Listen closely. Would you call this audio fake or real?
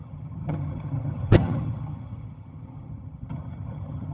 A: fake